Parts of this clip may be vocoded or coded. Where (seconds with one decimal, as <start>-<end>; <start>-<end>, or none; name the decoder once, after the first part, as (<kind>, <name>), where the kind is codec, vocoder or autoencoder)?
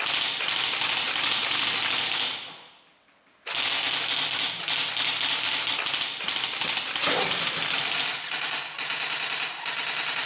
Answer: none